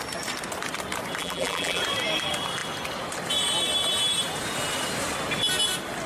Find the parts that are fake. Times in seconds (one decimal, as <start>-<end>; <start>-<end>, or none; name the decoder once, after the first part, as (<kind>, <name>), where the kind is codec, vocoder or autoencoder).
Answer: 1.2-1.8 (vocoder, BigVGAN v2)